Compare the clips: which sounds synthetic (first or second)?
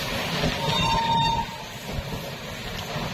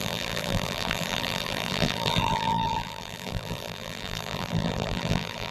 second